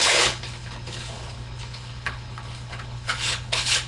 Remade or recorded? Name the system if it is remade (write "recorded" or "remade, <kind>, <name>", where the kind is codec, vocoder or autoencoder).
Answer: remade, codec, HILCodec